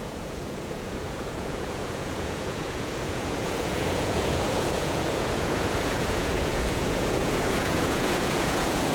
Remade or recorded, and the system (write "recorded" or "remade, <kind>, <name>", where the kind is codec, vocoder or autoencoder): remade, vocoder, Vocos